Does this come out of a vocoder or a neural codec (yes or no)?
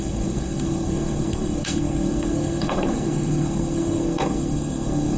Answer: yes